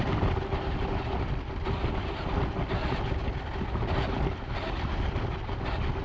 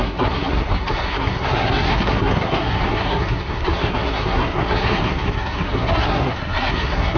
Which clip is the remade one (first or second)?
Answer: second